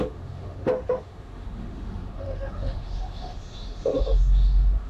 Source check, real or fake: fake